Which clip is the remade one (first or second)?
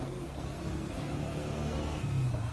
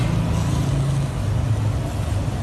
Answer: first